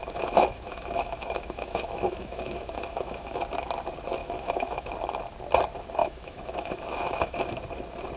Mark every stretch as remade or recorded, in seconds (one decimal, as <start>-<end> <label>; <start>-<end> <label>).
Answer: 0.0-3.4 remade; 3.4-4.2 recorded; 4.2-4.9 remade; 4.9-6.0 recorded; 6.0-7.5 remade; 7.5-8.2 recorded